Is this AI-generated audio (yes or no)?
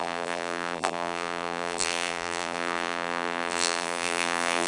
yes